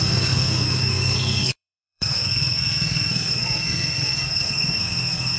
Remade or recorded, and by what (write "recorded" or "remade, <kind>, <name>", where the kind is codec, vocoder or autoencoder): remade, codec, SNAC